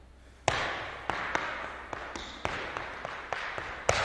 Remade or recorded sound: recorded